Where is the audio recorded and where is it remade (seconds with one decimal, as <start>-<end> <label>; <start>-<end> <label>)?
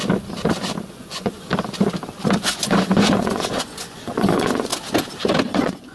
0.0-0.9 recorded; 0.9-1.5 remade; 1.5-2.4 recorded; 2.4-4.7 remade; 4.7-5.4 recorded; 5.4-5.9 remade